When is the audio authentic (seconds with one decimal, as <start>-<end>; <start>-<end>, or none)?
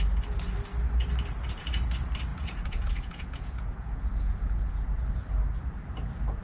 0.0-2.3; 5.1-6.4